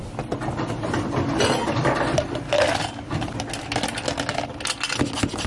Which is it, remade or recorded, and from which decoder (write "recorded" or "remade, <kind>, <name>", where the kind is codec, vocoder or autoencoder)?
recorded